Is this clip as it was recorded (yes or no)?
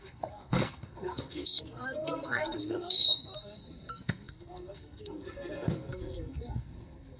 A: no